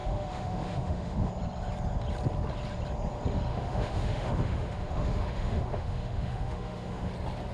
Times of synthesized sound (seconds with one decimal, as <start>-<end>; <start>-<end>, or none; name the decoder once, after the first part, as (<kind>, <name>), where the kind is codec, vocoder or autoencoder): 0.0-1.3 (autoencoder, DAC-VAE); 3.5-7.1